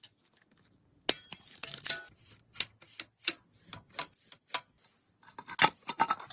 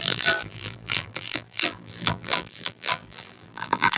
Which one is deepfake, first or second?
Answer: second